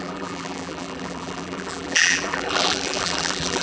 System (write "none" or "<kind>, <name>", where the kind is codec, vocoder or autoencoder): vocoder, BigVGAN v2